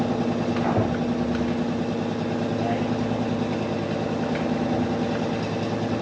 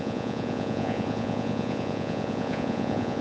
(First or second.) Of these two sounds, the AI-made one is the second